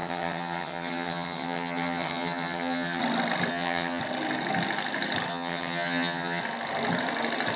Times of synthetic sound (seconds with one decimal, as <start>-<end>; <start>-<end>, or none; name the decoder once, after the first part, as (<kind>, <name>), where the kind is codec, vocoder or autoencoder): 0.0-3.0 (vocoder, HiFi-GAN); 3.5-4.0; 5.3-6.4